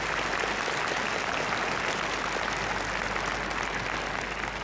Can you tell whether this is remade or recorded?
recorded